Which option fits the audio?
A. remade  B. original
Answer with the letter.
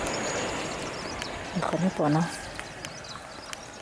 B